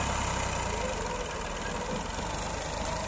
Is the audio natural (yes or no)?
yes